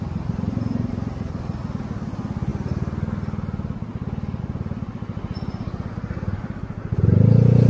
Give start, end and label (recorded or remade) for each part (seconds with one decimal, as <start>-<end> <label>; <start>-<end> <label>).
0.0-7.7 recorded